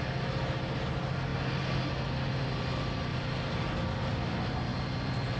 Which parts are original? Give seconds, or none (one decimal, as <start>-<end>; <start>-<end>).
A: 0.0-5.4